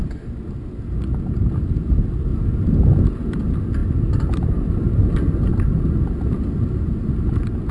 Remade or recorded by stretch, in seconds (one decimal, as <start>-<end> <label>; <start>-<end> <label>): 0.0-7.7 recorded